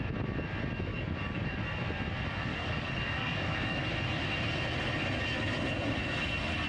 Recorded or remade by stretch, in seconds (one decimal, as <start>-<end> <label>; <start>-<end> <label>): 0.0-0.9 recorded; 0.9-1.6 remade; 1.6-2.5 recorded; 2.5-3.9 remade; 3.9-6.7 recorded